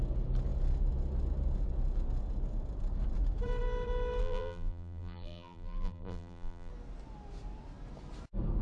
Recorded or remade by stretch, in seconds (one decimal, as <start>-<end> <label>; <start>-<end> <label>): 0.0-4.2 recorded; 4.2-6.7 remade; 6.7-8.6 recorded